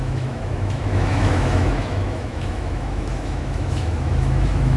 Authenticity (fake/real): fake